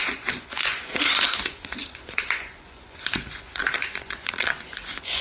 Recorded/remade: remade